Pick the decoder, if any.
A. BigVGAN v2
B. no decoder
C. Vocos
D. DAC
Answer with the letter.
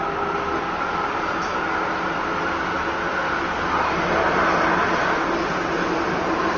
B